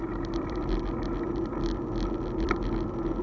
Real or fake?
real